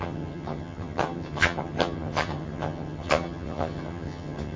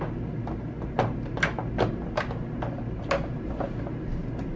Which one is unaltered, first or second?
second